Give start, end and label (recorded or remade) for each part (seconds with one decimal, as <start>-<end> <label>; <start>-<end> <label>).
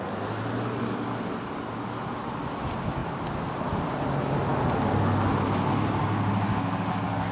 0.0-7.3 recorded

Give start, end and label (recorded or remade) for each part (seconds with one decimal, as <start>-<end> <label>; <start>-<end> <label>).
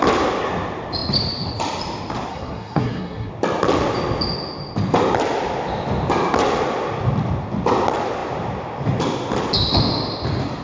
0.0-2.3 recorded; 2.3-3.3 remade; 3.3-10.6 recorded